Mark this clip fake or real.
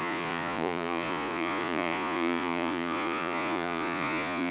fake